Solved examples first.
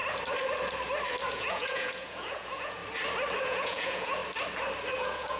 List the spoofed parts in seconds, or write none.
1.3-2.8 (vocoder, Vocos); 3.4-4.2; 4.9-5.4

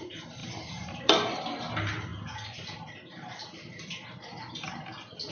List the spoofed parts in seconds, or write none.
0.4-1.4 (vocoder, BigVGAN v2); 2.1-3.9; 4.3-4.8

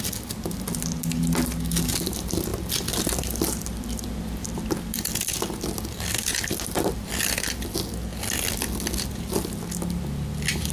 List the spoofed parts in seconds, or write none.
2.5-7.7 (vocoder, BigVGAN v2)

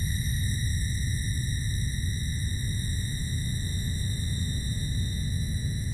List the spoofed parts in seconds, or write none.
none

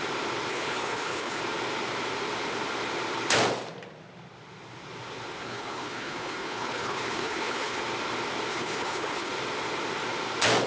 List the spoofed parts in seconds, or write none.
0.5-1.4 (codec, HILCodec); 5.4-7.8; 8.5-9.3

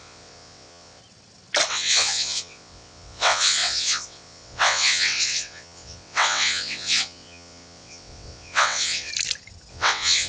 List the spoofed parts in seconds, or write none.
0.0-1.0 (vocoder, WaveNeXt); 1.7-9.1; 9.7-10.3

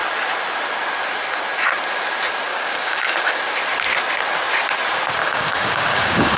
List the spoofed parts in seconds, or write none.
2.5-3.4 (codec, DAC); 5.2-6.4